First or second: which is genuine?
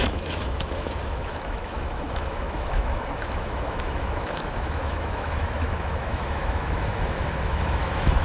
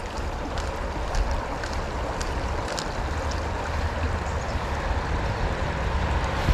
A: second